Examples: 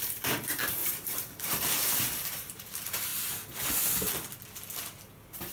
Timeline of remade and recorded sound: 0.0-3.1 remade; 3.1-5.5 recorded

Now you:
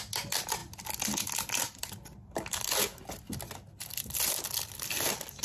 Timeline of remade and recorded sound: 0.0-5.4 recorded

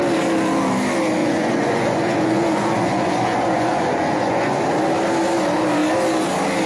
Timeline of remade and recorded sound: 0.0-1.2 recorded; 1.2-4.6 remade; 4.6-6.7 recorded